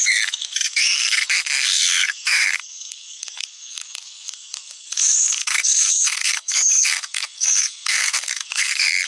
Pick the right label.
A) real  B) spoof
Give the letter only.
B